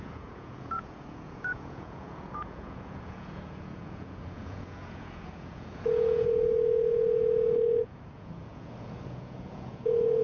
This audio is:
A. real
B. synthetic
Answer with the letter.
B